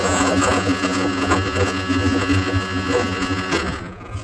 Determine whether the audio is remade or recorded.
remade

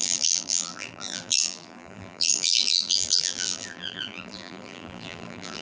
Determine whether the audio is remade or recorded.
remade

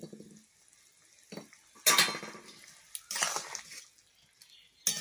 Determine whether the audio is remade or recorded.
recorded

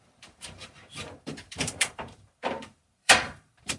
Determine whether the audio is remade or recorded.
remade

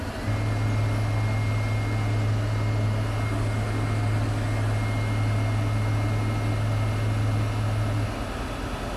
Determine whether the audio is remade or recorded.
recorded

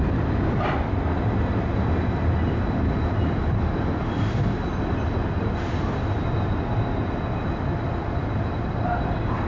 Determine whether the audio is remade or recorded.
recorded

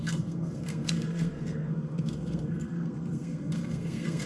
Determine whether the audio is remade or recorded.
remade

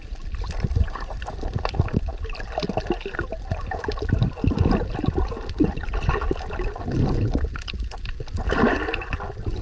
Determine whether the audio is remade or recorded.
recorded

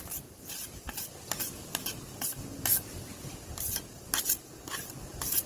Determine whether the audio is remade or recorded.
recorded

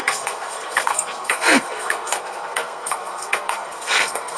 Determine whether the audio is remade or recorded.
remade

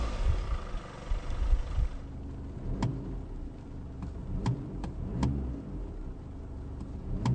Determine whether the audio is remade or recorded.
recorded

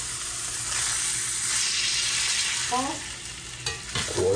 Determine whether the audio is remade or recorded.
recorded